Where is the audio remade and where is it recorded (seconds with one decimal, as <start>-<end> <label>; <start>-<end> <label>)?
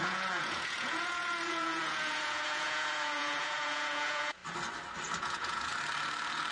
0.0-4.4 remade; 4.4-5.2 recorded; 5.2-5.7 remade; 5.7-6.5 recorded